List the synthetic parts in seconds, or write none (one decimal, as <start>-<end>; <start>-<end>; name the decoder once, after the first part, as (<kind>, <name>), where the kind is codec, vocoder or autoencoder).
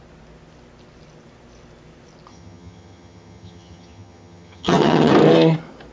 2.3-5.1 (vocoder, HiFi-GAN)